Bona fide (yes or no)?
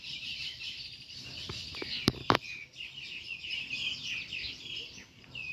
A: yes